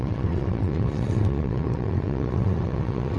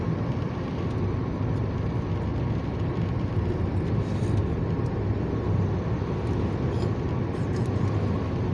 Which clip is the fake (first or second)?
first